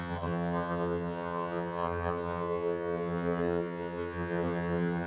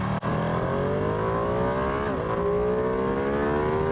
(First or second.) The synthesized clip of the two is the first